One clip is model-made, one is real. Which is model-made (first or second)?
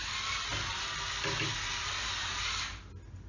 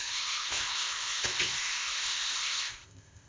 second